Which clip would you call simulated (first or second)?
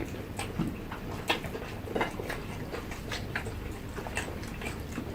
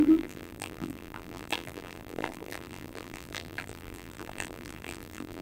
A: second